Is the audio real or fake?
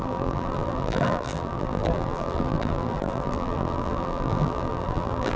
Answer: fake